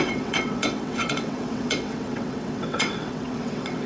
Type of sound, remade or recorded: remade